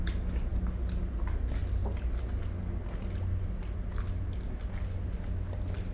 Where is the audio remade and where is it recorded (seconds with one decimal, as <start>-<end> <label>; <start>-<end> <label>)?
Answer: 0.0-5.9 recorded